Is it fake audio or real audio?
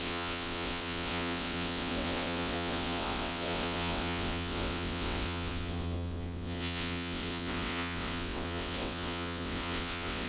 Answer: fake